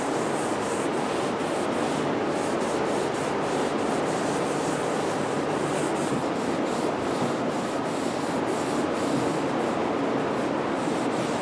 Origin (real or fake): real